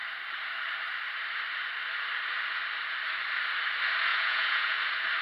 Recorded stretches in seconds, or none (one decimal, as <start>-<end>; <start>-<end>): 0.0-4.1; 4.8-5.2